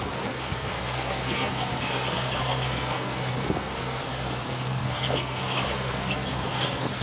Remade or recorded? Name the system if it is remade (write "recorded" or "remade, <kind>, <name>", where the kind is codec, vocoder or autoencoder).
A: remade, codec, SNAC